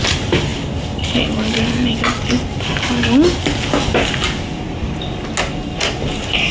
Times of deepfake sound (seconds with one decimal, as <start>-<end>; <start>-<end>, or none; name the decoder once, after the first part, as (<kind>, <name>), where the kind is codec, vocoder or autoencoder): none